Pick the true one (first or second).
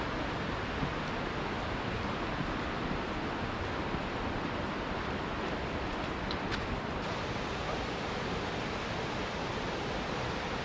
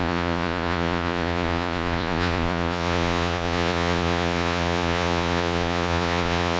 first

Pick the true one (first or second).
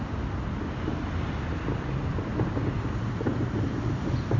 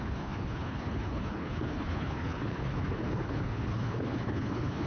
first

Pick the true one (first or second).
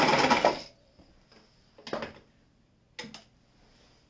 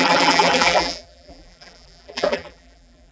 first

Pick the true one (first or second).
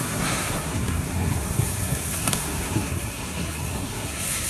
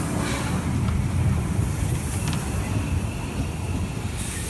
second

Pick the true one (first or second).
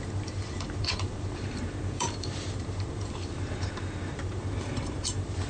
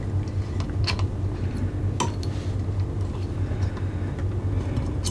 second